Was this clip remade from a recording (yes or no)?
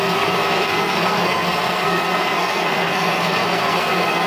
yes